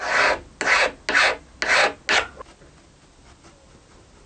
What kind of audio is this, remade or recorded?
recorded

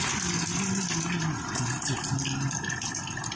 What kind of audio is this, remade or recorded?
recorded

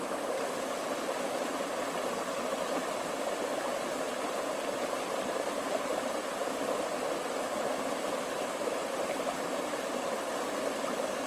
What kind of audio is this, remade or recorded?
recorded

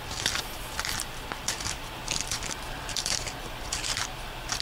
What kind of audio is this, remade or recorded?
remade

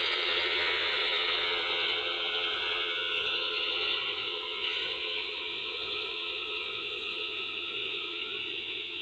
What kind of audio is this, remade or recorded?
remade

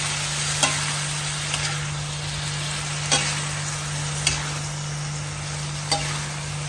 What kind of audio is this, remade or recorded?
recorded